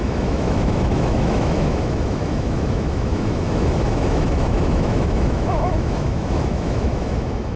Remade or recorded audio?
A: remade